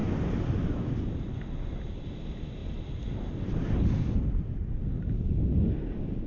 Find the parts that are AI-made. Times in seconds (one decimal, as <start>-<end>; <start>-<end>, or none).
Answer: none